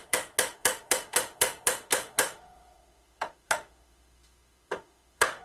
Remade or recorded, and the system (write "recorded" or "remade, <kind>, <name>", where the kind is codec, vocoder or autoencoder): remade, autoencoder, DAC-VAE